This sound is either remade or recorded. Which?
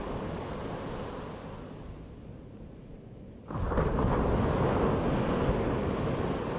recorded